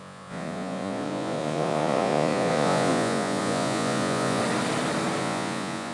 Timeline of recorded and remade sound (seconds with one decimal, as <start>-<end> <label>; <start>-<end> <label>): 0.0-4.4 remade; 4.4-5.2 recorded; 5.2-5.9 remade